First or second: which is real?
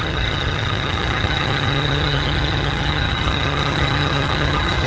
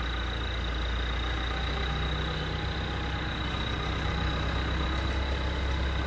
second